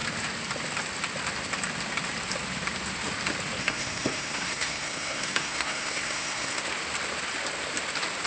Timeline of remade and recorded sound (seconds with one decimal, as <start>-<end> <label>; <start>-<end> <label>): 0.0-3.6 recorded; 3.6-6.6 remade; 6.6-8.3 recorded